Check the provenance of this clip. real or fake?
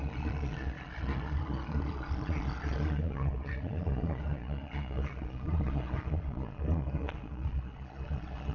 fake